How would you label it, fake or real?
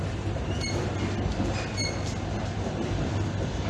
real